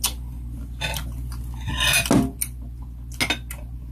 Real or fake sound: real